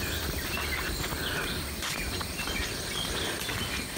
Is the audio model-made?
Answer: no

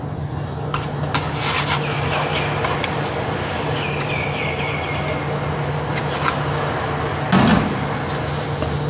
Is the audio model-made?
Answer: no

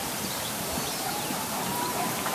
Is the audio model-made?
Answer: yes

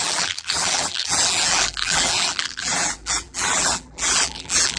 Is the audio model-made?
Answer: yes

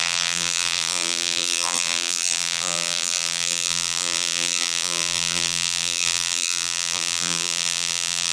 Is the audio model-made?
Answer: yes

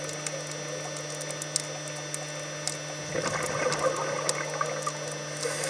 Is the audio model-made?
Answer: no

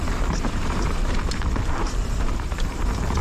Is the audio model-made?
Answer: yes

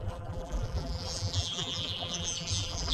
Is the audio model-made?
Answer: yes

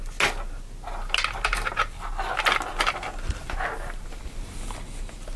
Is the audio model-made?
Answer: no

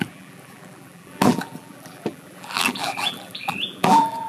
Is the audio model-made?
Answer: yes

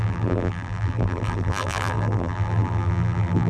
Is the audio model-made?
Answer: yes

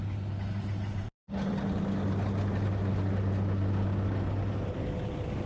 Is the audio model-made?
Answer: no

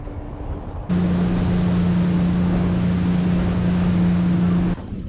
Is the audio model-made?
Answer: no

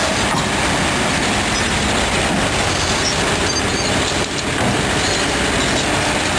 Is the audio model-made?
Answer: no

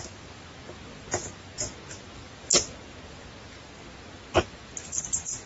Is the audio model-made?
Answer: no